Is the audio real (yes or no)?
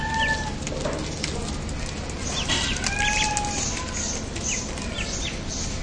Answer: yes